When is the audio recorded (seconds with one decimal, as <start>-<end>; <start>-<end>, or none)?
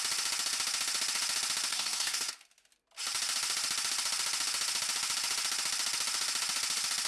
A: 0.0-1.7; 2.3-7.1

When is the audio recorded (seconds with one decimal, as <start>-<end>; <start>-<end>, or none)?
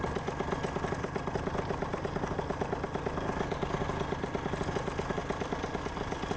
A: 0.0-6.4